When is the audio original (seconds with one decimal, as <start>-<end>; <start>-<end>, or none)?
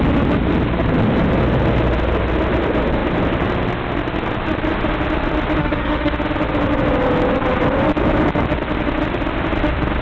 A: 0.0-5.6; 6.1-10.0